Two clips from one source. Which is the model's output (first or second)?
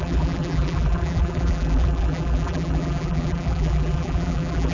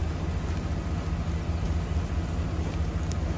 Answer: first